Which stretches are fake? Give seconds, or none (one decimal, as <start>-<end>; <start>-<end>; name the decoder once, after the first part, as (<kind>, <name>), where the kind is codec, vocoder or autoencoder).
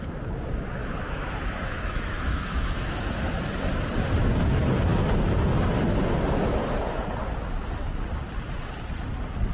0.8-3.0 (autoencoder, DAC-VAE)